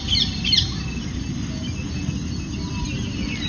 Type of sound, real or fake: real